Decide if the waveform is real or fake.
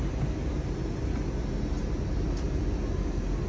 real